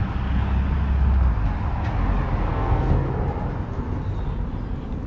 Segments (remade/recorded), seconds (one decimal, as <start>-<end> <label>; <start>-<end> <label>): 0.0-2.5 recorded; 2.5-3.1 remade; 3.1-5.1 recorded